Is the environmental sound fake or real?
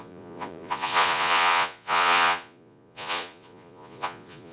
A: fake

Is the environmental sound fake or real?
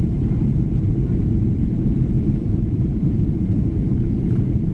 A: fake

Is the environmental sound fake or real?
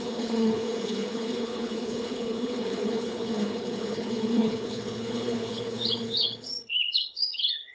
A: fake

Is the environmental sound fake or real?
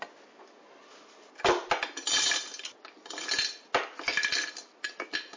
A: real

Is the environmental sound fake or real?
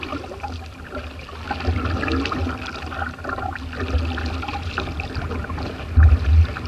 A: real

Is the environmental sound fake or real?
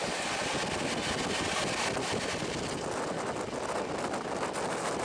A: real